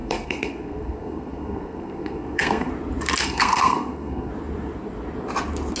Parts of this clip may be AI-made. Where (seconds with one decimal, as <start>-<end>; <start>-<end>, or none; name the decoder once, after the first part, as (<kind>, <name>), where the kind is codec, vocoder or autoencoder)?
0.0-2.7 (codec, SNAC); 3.2-4.3